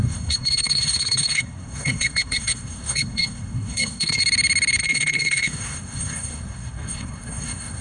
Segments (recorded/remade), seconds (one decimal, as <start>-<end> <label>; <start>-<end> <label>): 0.0-4.2 remade; 4.2-4.8 recorded; 4.8-7.8 remade